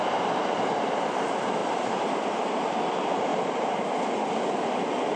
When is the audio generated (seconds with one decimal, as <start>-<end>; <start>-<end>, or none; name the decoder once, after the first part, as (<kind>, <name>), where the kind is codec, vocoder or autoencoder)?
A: 1.6-2.4 (vocoder, BigVGAN v2); 3.3-3.9